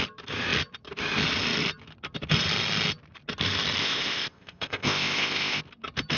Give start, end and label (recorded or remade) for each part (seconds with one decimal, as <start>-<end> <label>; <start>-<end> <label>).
0.0-3.8 recorded; 3.8-5.6 remade; 5.6-6.2 recorded